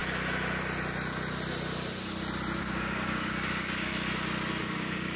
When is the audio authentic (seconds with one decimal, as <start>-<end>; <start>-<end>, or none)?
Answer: 0.0-2.6; 3.9-4.6